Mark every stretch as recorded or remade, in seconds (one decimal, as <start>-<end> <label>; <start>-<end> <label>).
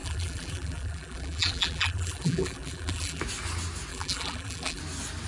0.0-3.2 remade; 3.2-3.9 recorded; 3.9-4.8 remade; 4.8-5.3 recorded